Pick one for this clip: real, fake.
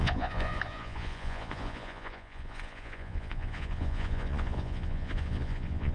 fake